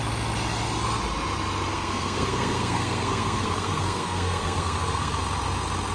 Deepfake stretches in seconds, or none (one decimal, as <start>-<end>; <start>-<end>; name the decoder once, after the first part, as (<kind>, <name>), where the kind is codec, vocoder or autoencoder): 1.7-5.2 (codec, SNAC)